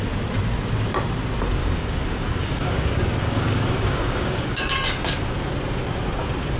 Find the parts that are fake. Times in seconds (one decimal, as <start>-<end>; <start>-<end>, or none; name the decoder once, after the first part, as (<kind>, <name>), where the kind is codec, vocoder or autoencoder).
1.6-5.3 (codec, DAC)